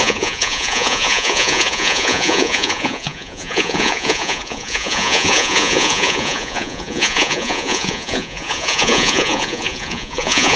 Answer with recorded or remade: remade